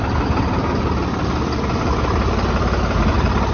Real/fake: fake